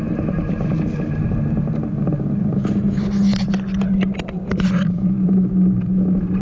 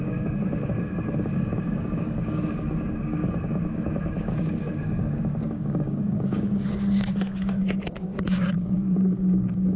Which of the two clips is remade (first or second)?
second